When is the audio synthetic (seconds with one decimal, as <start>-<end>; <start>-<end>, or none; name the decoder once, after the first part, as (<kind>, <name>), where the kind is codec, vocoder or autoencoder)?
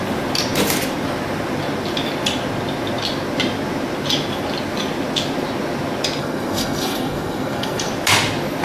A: 6.2-7.9 (codec, SNAC)